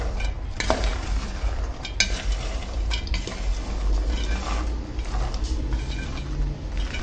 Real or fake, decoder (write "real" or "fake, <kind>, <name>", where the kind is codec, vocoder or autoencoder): real